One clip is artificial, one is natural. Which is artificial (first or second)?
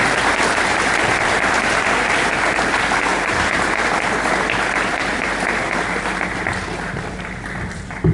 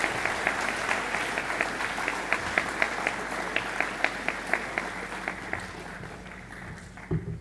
first